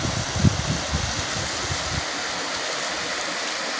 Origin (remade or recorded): recorded